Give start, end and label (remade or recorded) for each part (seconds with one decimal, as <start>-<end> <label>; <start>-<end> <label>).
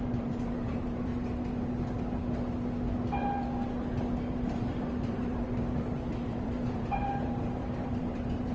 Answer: 0.0-1.1 remade; 1.1-4.3 recorded; 4.3-8.5 remade